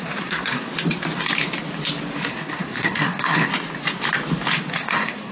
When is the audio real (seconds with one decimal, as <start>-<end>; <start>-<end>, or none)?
0.7-2.3; 3.5-4.7